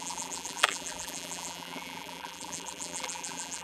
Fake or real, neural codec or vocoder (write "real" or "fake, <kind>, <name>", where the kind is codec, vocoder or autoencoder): fake, vocoder, BigVGAN v2